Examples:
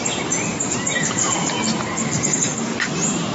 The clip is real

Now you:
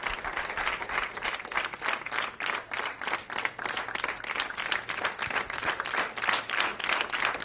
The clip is real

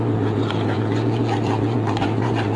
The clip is fake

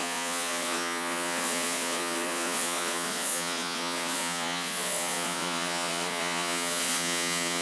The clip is fake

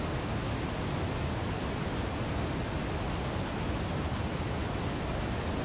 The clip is real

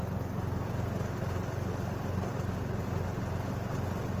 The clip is real